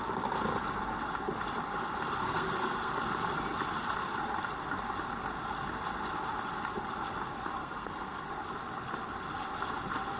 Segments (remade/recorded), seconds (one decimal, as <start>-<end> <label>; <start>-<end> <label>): 0.0-2.2 recorded; 2.2-2.9 remade; 2.9-7.6 recorded; 7.6-8.3 remade; 8.3-10.2 recorded